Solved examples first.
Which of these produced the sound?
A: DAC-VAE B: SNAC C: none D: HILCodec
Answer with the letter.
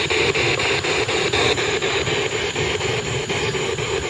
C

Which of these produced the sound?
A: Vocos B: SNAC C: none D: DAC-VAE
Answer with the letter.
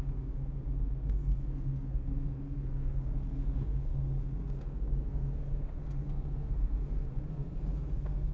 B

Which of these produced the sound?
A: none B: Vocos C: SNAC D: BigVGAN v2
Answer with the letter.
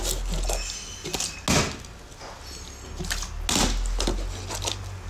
A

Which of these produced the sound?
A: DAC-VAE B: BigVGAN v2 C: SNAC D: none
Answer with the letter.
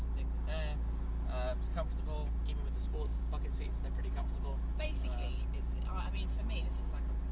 D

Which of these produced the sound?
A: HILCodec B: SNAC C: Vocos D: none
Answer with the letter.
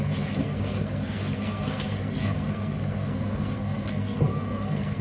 B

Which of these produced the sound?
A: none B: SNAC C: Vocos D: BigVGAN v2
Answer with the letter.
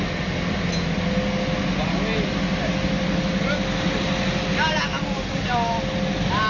A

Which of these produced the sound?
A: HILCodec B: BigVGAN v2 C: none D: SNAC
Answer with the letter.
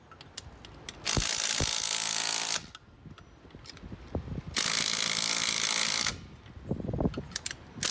C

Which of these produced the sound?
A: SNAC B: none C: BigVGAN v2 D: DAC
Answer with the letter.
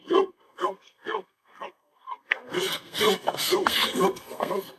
A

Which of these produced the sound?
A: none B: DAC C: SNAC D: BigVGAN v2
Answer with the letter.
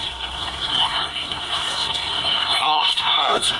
C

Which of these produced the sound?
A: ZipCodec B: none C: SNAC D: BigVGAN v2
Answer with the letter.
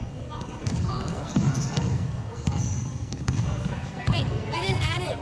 C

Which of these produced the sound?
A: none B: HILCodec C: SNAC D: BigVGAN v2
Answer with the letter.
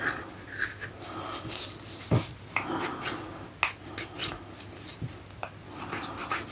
A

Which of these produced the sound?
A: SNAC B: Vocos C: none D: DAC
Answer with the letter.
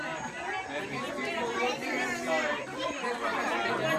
C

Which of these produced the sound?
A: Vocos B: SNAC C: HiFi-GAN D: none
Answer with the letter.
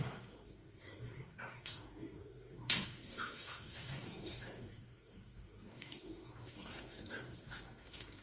B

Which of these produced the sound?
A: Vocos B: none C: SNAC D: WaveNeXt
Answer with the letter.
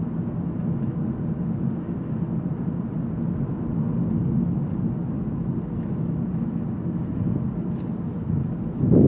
B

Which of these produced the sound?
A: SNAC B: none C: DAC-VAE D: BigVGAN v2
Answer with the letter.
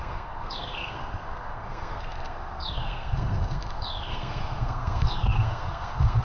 A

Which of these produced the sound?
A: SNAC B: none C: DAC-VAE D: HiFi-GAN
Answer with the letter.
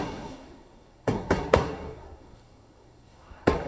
A